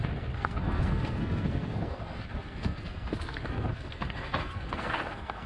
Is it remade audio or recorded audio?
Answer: remade